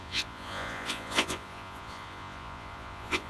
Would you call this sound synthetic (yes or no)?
yes